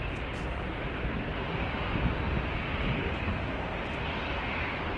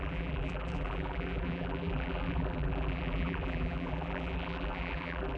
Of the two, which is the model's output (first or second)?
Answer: second